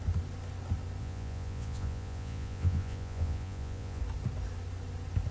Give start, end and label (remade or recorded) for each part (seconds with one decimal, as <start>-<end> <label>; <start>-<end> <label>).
0.0-1.0 recorded; 1.0-4.0 remade; 4.0-5.3 recorded